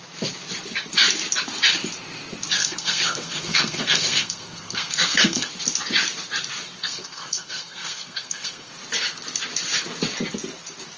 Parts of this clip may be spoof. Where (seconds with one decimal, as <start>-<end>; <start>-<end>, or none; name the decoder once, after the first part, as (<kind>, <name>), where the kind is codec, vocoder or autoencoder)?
2.6-5.5 (codec, SNAC); 6.8-8.7